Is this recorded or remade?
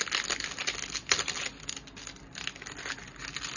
recorded